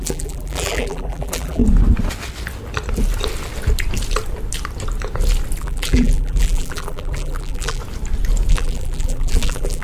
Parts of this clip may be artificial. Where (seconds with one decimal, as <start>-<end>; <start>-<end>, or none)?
0.0-1.6; 5.6-7.8; 8.5-9.8